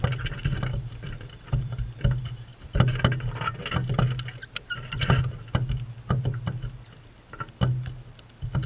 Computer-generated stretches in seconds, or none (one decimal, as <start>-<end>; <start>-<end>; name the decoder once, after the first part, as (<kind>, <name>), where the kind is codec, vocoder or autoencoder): none